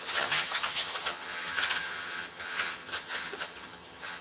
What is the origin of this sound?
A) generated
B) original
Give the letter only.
A